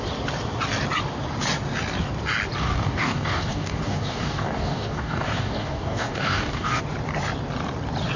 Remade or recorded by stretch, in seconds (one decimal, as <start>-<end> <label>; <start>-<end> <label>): 0.0-2.6 recorded; 2.6-6.8 remade; 6.8-8.2 recorded